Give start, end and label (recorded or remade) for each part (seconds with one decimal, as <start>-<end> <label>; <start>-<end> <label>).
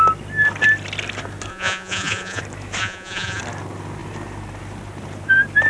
0.0-1.5 recorded; 1.5-2.4 remade; 2.4-2.8 recorded; 2.8-3.4 remade; 3.4-5.7 recorded